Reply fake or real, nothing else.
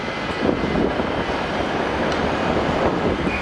real